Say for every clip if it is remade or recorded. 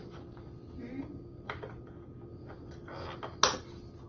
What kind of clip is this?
recorded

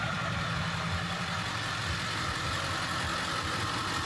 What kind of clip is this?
remade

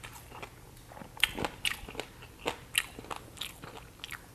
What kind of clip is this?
recorded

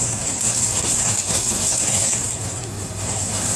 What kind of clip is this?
remade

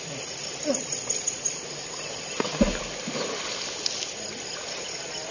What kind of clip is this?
recorded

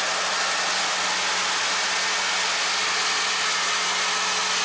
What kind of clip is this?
recorded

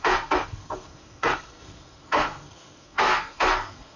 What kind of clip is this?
remade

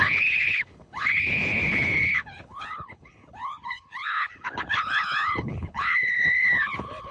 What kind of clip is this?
remade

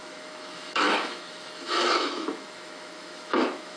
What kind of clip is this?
remade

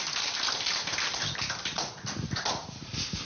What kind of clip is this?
recorded